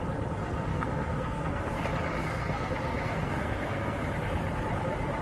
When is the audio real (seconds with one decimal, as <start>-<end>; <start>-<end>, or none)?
0.0-0.7; 1.8-2.2; 4.0-5.2